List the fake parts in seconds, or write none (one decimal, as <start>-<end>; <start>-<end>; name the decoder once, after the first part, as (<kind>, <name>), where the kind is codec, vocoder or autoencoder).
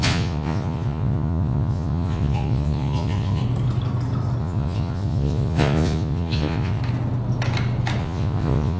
0.0-3.4 (vocoder, Vocos); 4.4-6.8; 8.0-8.8